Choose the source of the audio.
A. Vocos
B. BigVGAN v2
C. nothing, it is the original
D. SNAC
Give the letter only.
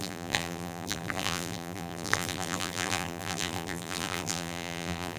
B